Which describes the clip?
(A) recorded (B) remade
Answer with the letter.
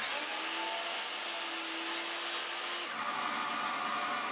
A